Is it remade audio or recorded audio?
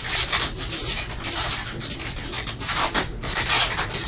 remade